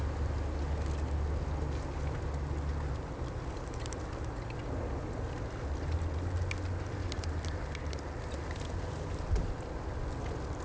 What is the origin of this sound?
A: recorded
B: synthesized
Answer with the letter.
A